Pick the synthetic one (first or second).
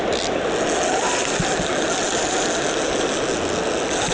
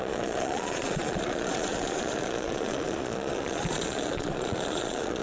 second